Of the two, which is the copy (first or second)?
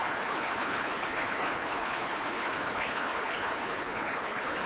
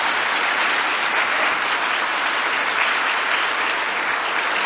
first